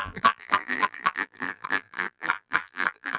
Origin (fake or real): fake